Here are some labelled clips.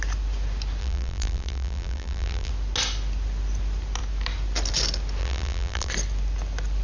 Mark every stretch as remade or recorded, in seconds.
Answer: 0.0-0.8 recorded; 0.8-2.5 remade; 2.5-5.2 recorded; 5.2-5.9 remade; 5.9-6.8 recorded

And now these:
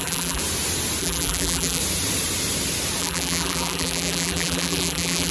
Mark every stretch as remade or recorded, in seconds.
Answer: 0.0-0.4 remade; 0.4-1.0 recorded; 1.0-1.8 remade; 1.8-3.0 recorded; 3.0-5.3 remade

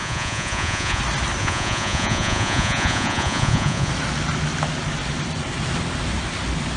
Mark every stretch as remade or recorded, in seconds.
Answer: 0.0-1.0 remade; 1.0-1.4 recorded; 1.4-3.9 remade; 3.9-6.8 recorded

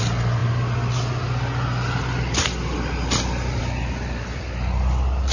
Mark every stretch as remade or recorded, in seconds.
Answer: 0.0-5.3 recorded

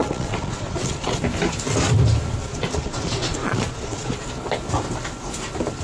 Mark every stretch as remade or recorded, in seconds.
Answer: 0.0-1.2 remade; 1.2-2.5 recorded; 2.5-4.1 remade; 4.1-5.8 recorded

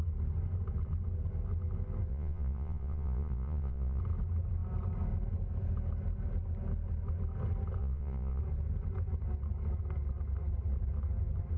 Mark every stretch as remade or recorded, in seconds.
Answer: 0.0-2.1 recorded; 2.1-4.0 remade; 4.0-7.8 recorded; 7.8-8.4 remade; 8.4-11.6 recorded